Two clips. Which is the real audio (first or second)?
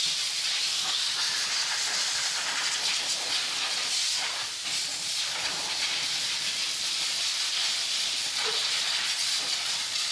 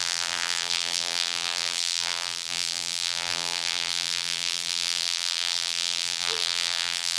first